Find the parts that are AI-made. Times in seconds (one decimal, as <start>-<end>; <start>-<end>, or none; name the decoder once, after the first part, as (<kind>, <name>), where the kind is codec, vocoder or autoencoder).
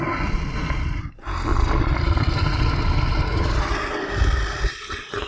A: none